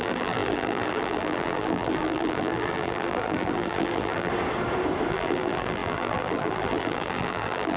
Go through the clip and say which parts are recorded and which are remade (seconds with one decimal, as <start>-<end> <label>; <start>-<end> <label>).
0.0-4.3 remade; 4.3-5.1 recorded; 5.1-7.8 remade